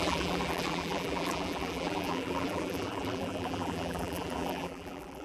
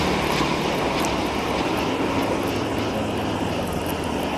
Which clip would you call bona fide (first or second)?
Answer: second